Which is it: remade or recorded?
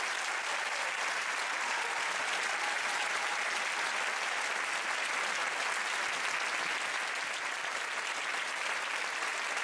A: recorded